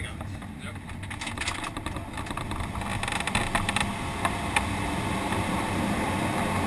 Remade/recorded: recorded